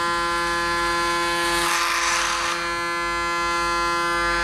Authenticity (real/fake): real